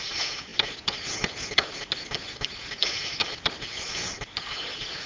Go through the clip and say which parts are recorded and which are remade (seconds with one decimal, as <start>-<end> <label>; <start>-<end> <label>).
0.0-3.2 recorded; 3.2-4.2 remade; 4.2-5.1 recorded